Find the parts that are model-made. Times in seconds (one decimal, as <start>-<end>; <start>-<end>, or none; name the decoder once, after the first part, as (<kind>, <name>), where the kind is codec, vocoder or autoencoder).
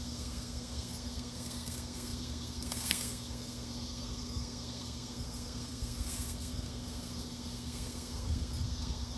0.0-9.2 (codec, SNAC)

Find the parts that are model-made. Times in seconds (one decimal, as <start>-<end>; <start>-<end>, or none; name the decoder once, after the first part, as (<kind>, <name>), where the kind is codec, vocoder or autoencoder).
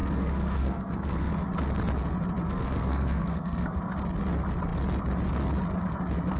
0.0-1.3 (codec, SNAC); 2.4-3.8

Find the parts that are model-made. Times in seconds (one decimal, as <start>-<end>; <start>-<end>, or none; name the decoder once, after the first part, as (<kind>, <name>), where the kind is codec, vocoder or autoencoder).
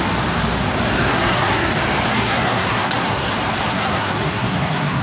1.1-1.7 (codec, SNAC); 2.1-3.3; 3.7-5.0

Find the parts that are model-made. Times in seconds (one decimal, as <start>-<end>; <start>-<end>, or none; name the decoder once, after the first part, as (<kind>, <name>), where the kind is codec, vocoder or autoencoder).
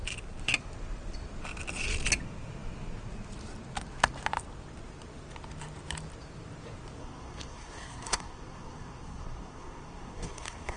7.0-10.8 (codec, SNAC)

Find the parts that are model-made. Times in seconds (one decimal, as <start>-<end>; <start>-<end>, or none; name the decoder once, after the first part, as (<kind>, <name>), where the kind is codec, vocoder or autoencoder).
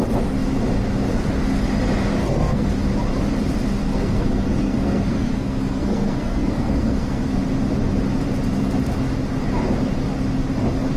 2.2-2.7 (codec, SNAC); 3.8-7.4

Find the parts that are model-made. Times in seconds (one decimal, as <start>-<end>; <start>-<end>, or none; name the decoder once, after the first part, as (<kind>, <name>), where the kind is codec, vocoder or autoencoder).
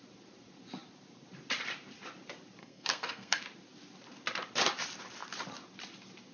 2.6-3.4 (codec, SNAC)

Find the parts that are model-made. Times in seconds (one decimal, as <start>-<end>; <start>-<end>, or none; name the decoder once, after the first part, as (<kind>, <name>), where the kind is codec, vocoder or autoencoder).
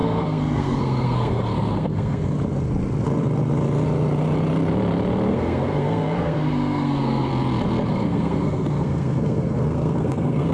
0.0-2.2 (codec, SNAC); 5.3-7.3; 7.9-10.5